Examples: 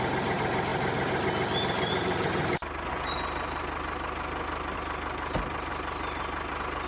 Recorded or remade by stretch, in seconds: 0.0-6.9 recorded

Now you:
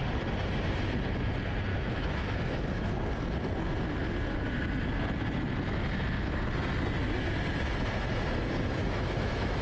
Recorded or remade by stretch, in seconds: 0.0-1.7 recorded; 1.7-3.1 remade; 3.1-8.8 recorded; 8.8-9.6 remade

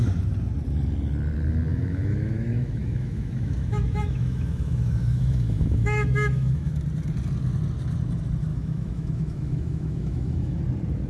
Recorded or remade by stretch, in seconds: 0.0-1.7 recorded; 1.7-6.8 remade; 6.8-8.5 recorded; 8.5-10.6 remade; 10.6-11.1 recorded

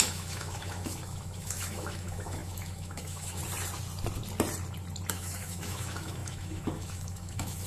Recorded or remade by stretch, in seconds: 0.0-3.4 remade; 3.4-5.1 recorded; 5.1-7.7 remade